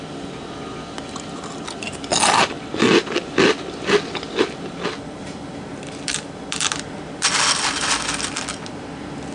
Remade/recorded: recorded